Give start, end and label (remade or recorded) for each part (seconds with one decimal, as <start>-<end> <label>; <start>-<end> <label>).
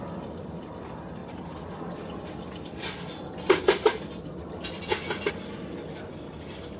0.0-6.8 recorded